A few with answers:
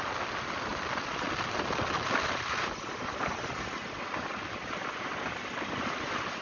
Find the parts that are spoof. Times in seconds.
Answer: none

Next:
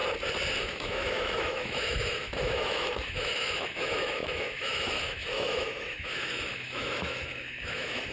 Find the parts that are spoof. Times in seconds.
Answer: 0.6-8.1 (autoencoder, DAC-VAE)

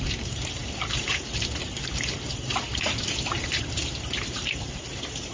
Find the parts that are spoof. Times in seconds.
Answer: 0.0-5.3 (vocoder, BigVGAN v2)